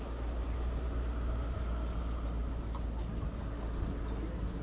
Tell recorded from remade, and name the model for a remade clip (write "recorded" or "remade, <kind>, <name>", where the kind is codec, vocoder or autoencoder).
recorded